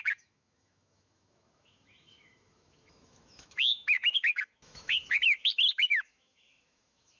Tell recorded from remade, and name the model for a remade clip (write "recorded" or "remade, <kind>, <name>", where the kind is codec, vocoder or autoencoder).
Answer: remade, autoencoder, DAC-VAE